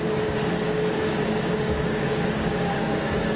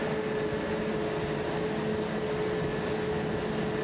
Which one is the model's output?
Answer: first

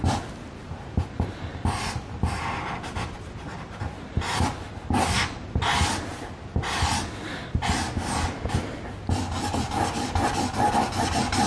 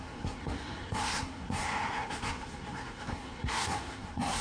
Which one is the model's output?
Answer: second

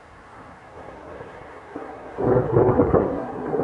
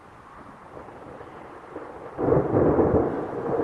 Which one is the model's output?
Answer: first